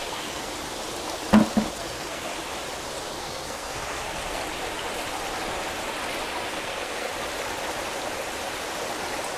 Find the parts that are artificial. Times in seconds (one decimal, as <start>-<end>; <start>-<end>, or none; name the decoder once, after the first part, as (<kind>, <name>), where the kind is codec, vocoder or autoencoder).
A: 0.0-0.5 (codec, SNAC); 1.7-2.3; 3.2-4.4; 6.5-7.1